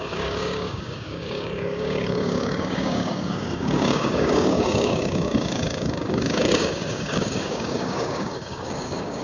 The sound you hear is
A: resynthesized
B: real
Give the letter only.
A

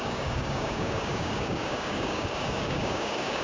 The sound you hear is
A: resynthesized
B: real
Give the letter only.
A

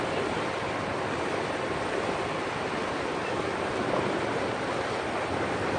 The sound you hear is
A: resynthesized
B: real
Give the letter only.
B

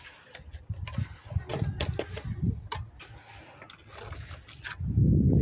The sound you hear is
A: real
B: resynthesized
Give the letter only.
A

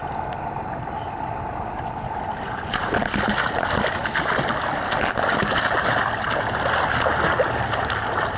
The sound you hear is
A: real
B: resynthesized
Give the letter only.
A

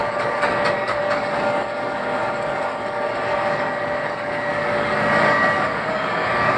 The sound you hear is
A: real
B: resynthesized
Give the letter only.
B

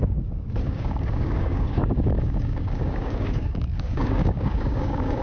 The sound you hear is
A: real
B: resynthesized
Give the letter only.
B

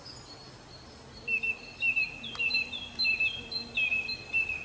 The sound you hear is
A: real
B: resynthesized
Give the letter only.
A